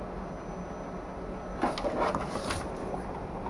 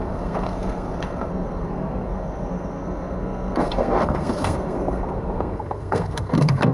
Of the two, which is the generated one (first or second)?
second